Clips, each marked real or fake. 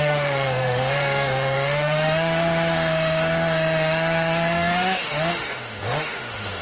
fake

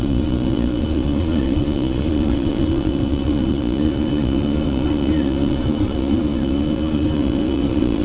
fake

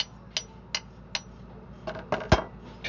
real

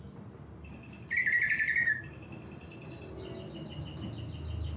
real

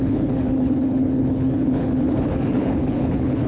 fake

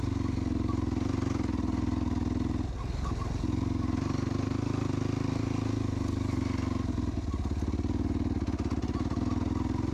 real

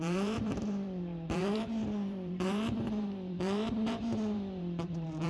fake